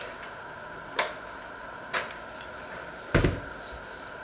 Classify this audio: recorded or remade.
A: recorded